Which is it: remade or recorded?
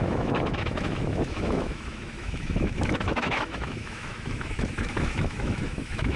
remade